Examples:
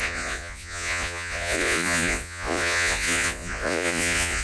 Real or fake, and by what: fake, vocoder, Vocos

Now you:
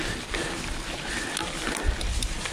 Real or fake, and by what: real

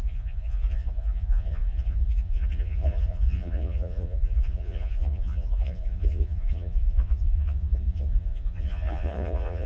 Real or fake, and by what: fake, vocoder, Vocos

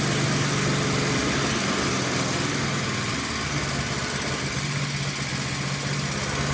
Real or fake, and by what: real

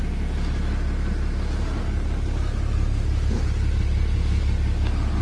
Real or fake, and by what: real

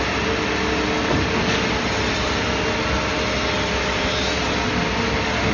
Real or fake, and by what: real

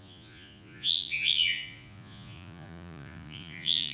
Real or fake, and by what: fake, vocoder, Vocos